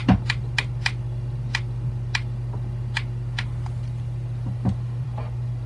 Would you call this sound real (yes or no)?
yes